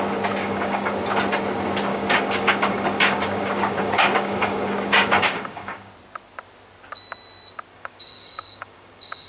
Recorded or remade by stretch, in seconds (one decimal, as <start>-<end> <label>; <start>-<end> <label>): 0.0-0.4 recorded; 0.4-0.9 remade; 0.9-1.9 recorded; 1.9-5.9 remade; 5.9-7.7 recorded; 7.7-9.3 remade